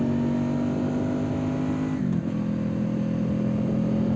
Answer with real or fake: real